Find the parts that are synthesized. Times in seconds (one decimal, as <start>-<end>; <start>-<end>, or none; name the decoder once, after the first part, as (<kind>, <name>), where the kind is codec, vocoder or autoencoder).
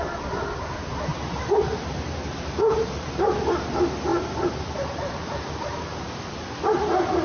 none